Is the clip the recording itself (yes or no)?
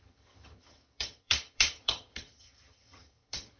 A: no